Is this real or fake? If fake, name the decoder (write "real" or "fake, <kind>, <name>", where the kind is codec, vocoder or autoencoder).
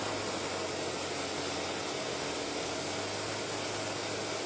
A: real